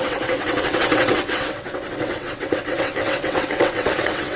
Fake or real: fake